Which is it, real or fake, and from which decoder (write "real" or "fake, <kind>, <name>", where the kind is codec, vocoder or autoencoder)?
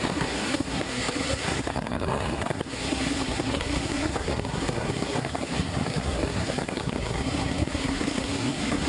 fake, codec, SNAC